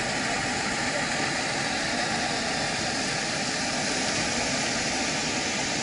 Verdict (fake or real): real